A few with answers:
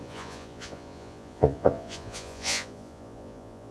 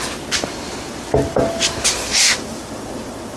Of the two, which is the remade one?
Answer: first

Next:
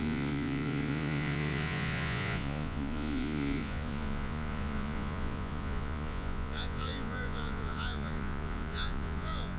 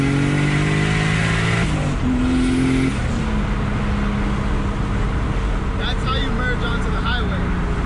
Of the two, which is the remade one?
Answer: first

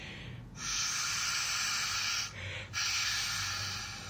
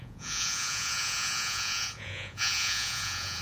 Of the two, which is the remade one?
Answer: second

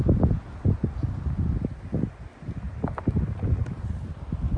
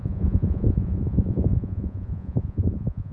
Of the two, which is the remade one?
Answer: second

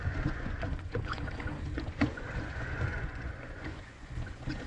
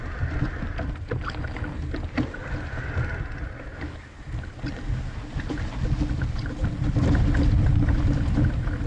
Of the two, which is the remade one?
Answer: first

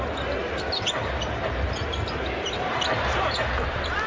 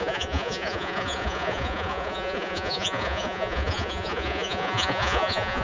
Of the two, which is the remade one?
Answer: second